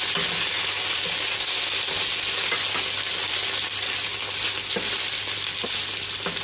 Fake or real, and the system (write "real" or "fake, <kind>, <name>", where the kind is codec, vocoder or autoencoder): real